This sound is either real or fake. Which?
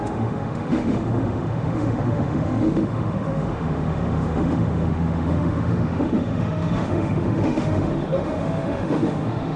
fake